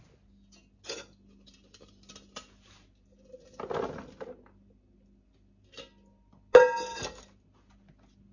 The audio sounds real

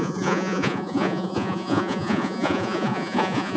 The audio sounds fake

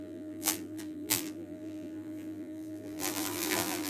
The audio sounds fake